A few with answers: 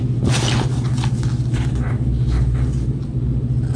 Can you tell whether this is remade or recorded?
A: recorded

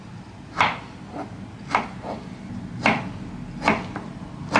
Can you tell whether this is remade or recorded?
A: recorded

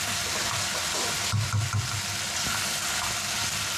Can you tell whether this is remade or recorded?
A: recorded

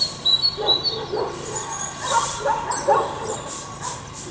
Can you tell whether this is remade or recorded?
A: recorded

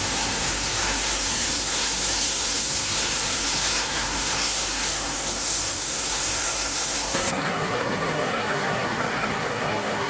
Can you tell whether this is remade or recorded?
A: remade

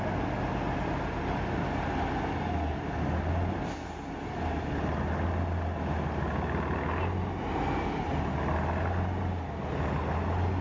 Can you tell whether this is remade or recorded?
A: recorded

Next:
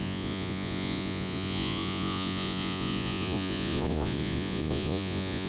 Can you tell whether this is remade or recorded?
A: remade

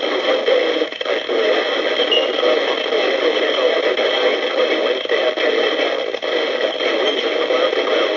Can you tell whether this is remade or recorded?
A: recorded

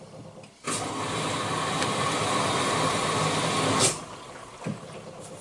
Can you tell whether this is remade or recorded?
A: recorded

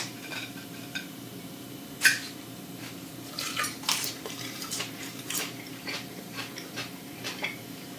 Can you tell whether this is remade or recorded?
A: remade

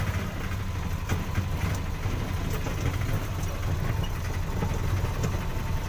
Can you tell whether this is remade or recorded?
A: recorded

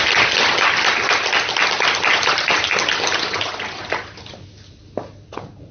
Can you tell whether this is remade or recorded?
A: recorded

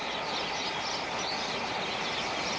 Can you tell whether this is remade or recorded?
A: recorded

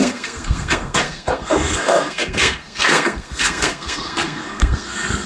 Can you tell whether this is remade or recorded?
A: remade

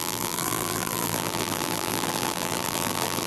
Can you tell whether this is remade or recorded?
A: remade